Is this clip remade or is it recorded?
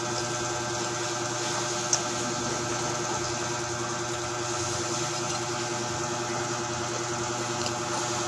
recorded